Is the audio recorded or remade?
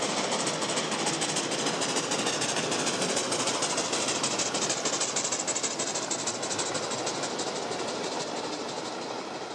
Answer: recorded